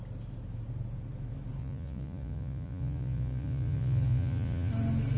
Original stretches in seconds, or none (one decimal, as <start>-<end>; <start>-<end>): 0.0-1.6; 4.7-5.2